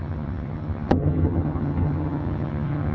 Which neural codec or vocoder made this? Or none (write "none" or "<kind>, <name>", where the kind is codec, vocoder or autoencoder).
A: vocoder, HiFi-GAN